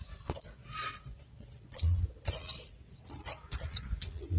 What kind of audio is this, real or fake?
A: fake